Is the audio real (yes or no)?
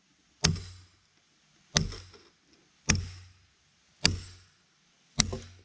yes